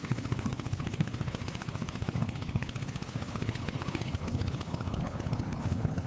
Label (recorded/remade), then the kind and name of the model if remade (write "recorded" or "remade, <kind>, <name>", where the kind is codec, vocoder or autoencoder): remade, codec, HILCodec